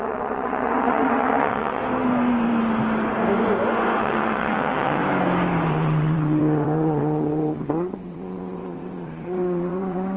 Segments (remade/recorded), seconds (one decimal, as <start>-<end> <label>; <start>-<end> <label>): 0.0-1.8 remade; 1.8-4.0 recorded; 4.0-5.0 remade; 5.0-5.7 recorded; 5.7-10.2 remade